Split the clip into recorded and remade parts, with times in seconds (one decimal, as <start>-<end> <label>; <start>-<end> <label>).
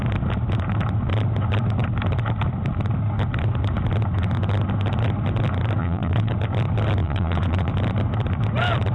0.0-5.8 recorded; 5.8-6.3 remade; 6.3-7.0 recorded; 7.0-7.7 remade; 7.7-8.9 recorded